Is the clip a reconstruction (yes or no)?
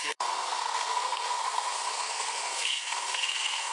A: yes